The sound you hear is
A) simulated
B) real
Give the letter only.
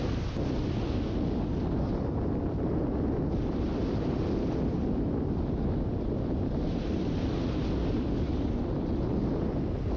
B